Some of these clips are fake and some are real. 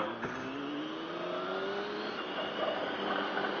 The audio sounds real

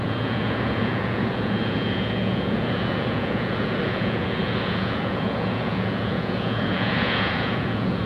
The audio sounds fake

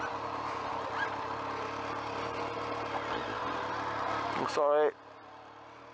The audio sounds real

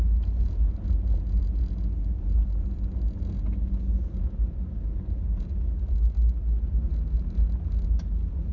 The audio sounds real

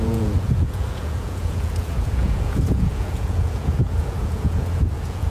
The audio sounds fake